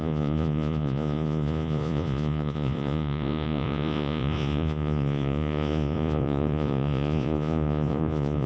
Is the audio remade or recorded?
remade